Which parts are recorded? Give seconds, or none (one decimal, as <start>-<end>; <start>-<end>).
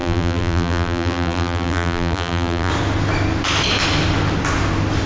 2.7-5.1